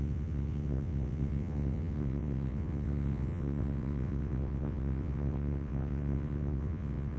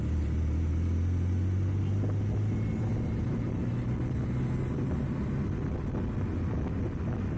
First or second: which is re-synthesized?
first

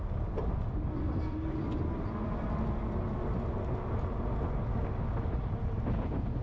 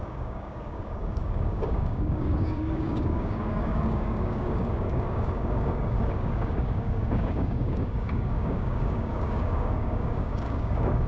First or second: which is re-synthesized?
second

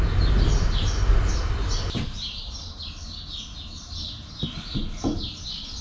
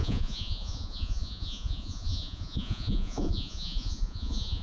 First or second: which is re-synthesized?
second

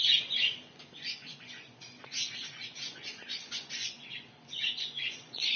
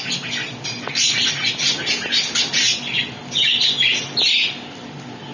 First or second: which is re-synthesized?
first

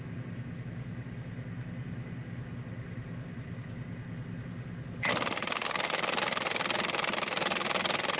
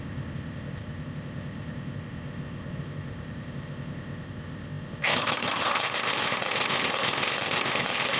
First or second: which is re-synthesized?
second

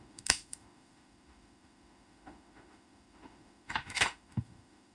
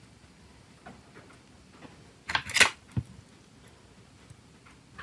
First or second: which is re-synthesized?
first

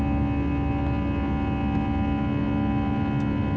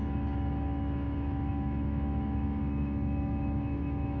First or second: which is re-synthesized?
second